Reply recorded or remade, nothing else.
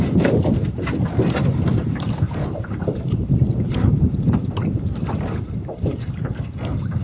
remade